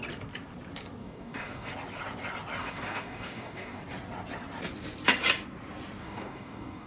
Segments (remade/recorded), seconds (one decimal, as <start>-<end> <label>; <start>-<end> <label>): 0.0-1.0 recorded; 1.0-1.7 remade; 1.7-2.6 recorded; 2.6-3.8 remade; 3.8-6.0 recorded; 6.0-6.9 remade